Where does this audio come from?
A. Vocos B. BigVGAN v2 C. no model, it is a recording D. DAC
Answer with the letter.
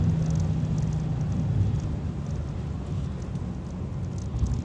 C